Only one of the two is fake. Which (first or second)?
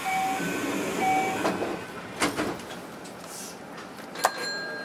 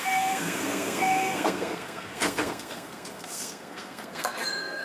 second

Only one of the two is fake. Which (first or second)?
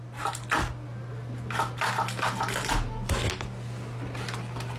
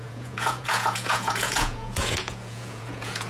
second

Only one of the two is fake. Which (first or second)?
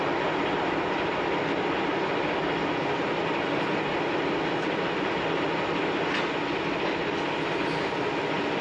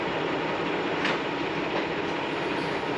second